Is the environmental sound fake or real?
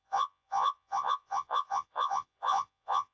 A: fake